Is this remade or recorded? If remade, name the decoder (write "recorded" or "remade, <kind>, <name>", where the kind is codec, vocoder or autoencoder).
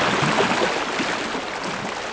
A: recorded